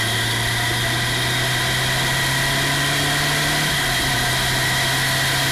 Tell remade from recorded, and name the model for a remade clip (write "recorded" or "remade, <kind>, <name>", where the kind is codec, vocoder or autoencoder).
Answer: recorded